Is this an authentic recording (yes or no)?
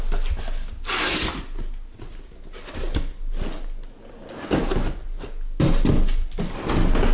yes